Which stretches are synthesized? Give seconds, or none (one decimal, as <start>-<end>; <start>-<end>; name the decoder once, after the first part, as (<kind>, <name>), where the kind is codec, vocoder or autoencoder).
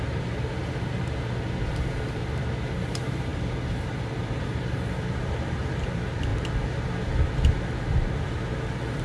0.0-6.3 (vocoder, BigVGAN v2); 7.9-9.0